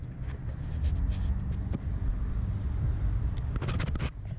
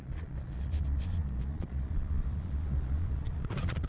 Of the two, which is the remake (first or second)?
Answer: second